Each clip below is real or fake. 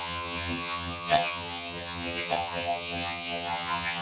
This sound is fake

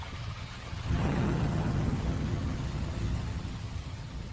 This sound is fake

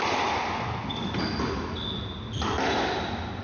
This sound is real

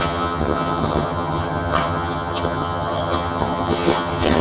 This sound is fake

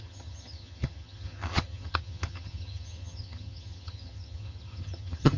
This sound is fake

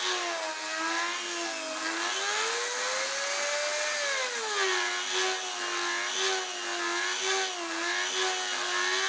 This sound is real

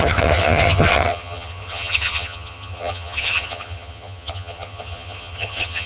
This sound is fake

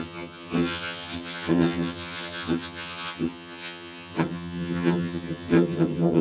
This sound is fake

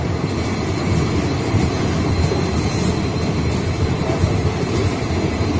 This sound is real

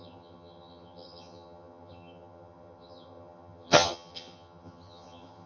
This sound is fake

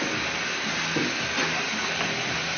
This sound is real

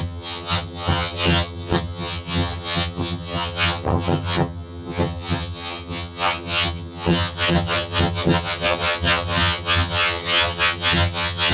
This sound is fake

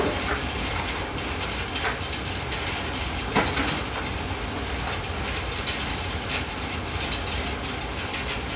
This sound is real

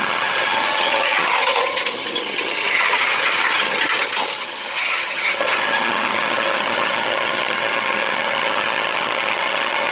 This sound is fake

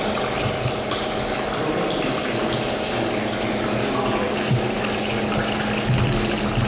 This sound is real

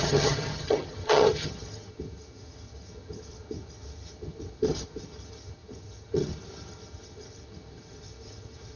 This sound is fake